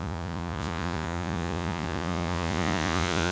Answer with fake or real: fake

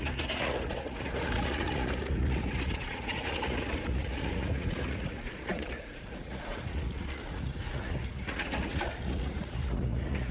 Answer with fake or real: fake